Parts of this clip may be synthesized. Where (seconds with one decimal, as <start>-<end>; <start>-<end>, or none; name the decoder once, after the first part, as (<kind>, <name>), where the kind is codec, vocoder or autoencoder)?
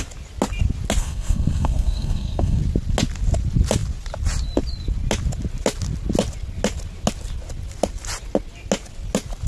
1.0-2.6 (codec, SNAC)